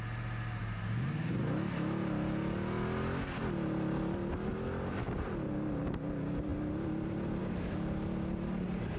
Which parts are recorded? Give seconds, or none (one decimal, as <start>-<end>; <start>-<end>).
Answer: 0.0-9.0